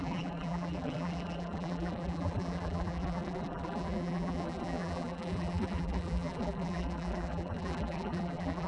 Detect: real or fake fake